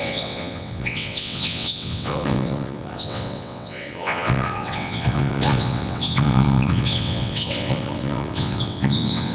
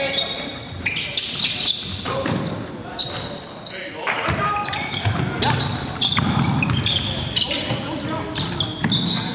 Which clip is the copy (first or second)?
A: first